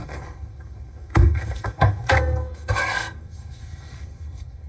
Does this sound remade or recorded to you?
remade